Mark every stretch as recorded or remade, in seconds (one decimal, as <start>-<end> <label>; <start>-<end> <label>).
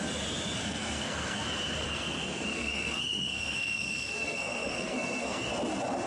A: 0.0-0.6 recorded; 0.6-1.4 remade; 1.4-1.8 recorded; 1.8-5.5 remade; 5.5-6.1 recorded